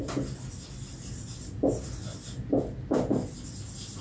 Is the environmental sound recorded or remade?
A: recorded